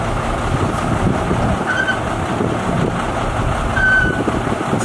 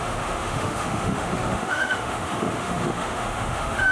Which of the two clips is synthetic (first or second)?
second